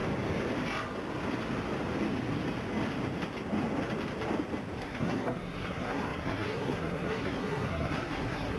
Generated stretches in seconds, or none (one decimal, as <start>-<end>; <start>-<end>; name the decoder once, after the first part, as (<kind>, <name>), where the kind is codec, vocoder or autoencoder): 4.8-8.6 (codec, SNAC)